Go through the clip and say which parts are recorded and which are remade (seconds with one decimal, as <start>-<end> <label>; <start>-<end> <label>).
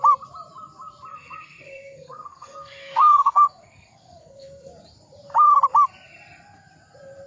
0.0-1.1 recorded; 1.1-4.7 remade; 4.7-7.3 recorded